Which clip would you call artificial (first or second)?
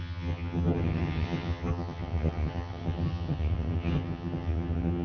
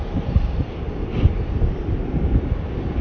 first